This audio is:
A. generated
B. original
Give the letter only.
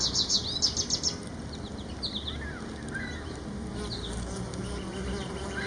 B